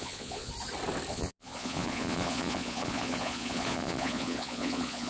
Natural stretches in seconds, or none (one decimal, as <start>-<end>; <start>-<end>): 0.5-1.1